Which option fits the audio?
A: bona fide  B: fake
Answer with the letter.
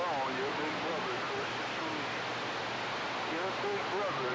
A